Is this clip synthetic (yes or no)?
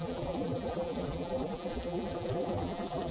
yes